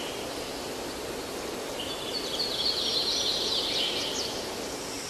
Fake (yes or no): no